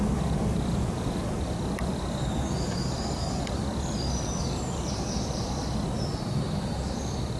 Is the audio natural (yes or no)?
yes